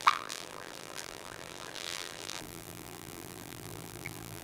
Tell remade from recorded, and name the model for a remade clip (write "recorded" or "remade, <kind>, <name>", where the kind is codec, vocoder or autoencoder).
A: remade, vocoder, BigVGAN v2